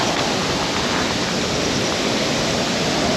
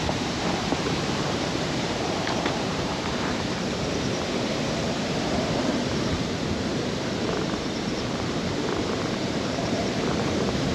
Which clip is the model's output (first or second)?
second